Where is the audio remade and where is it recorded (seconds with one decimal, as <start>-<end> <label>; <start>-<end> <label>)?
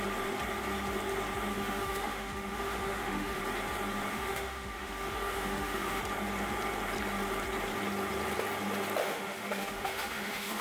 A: 0.0-1.5 recorded; 1.5-3.4 remade; 3.4-4.1 recorded; 4.1-6.0 remade; 6.0-9.0 recorded; 9.0-10.6 remade